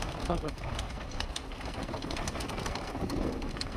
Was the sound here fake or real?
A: fake